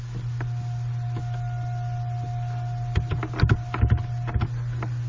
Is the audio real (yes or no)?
yes